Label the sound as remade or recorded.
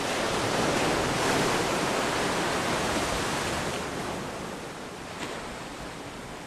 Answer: recorded